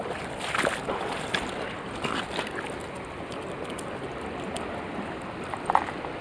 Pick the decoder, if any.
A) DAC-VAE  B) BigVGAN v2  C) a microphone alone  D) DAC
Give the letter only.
C